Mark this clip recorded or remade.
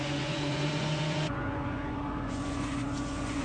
remade